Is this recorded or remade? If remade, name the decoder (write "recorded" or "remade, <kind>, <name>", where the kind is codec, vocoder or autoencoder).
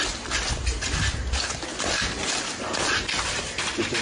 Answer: recorded